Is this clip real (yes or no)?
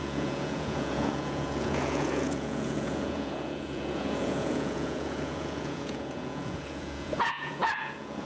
no